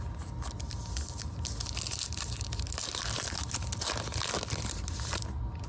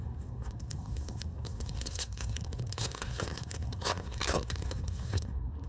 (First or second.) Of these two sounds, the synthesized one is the second